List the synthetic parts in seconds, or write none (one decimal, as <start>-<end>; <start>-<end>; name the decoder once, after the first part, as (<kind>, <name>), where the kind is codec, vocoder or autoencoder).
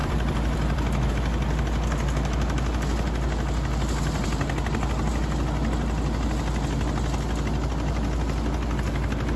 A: 0.0-1.1 (vocoder, BigVGAN v2)